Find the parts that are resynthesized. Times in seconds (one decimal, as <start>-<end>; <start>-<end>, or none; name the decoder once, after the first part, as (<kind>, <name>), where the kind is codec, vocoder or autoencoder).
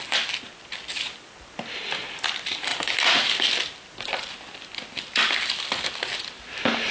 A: 2.7-4.3 (vocoder, BigVGAN v2)